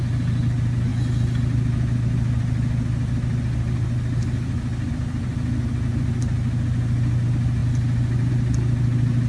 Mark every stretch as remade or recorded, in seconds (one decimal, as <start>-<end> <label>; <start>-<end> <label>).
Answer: 0.0-9.3 recorded